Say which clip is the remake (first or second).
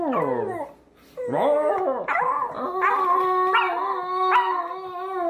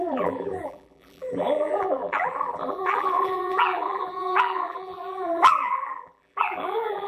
second